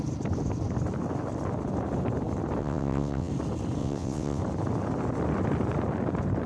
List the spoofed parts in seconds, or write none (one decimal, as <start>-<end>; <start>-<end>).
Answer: 2.6-3.3; 3.8-4.4